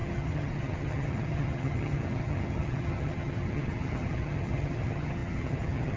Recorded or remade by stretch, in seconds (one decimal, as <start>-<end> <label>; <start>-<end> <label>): 0.0-6.0 remade